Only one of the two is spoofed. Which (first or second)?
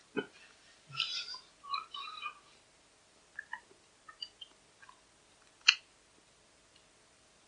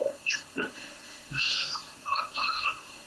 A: second